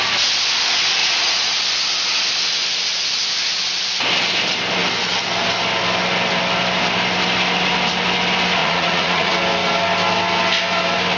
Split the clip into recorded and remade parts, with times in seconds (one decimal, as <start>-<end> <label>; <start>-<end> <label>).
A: 0.0-1.0 recorded; 1.0-1.6 remade; 1.6-8.6 recorded; 8.6-9.3 remade; 9.3-11.2 recorded